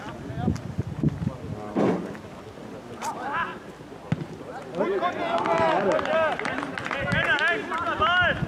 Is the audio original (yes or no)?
yes